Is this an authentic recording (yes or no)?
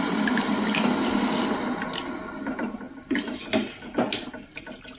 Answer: yes